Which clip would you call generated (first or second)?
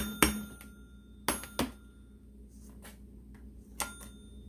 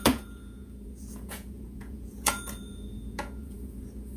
second